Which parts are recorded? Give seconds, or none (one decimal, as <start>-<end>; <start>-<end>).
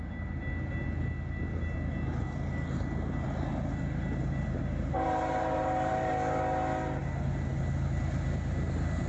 0.0-4.2; 6.1-9.1